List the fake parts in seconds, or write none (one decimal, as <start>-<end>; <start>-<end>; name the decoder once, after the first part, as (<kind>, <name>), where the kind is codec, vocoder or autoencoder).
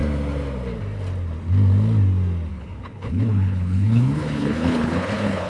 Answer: 2.5-5.5 (codec, HILCodec)